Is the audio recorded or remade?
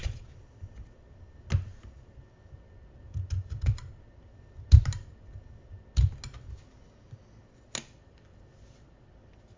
recorded